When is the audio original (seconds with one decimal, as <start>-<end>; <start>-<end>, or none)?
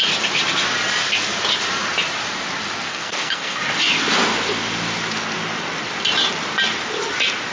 0.0-2.9; 3.6-7.5